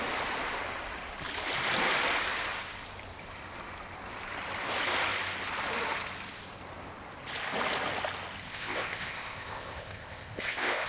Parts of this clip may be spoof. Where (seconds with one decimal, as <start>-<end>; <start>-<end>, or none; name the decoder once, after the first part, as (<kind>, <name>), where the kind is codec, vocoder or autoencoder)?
8.4-10.9 (codec, ZipCodec)